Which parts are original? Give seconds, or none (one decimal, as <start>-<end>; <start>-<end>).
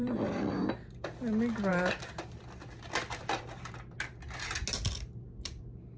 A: 0.7-1.7; 3.7-6.0